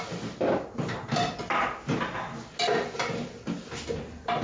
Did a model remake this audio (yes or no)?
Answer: no